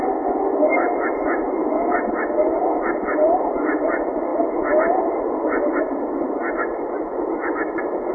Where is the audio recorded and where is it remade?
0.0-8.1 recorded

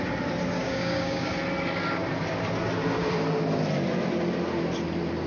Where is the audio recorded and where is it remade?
0.0-0.6 recorded; 0.6-1.3 remade; 1.3-5.3 recorded

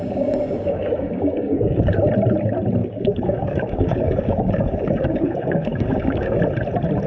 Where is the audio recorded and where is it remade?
0.0-1.9 remade; 1.9-2.8 recorded; 2.8-6.4 remade; 6.4-7.1 recorded

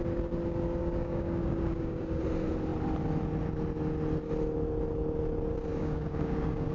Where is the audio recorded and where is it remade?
0.0-0.8 recorded; 0.8-2.2 remade; 2.2-5.7 recorded; 5.7-6.7 remade

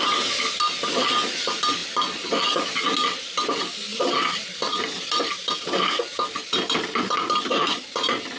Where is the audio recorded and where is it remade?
0.0-8.4 recorded

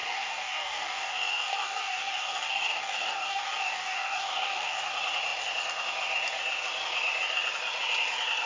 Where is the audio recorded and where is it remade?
0.0-4.8 remade; 4.8-8.5 recorded

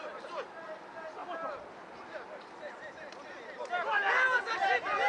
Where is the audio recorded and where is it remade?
0.0-5.1 recorded

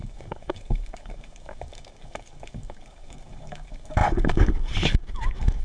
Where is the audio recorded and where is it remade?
0.0-5.6 remade